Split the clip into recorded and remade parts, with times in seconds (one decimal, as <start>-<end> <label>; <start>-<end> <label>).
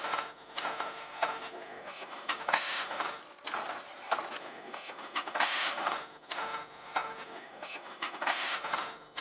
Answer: 0.0-3.2 remade; 3.2-4.4 recorded; 4.4-9.2 remade